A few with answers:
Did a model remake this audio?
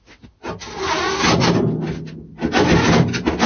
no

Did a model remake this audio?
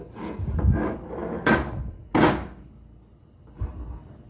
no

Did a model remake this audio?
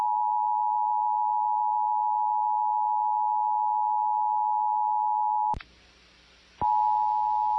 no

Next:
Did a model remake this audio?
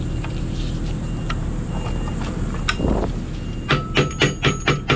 no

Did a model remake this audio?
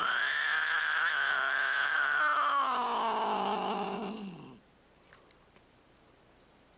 no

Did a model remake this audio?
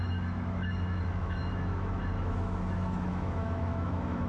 yes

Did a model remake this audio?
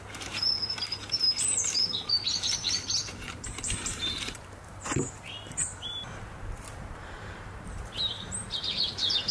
yes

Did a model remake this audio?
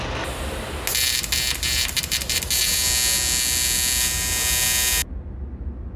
no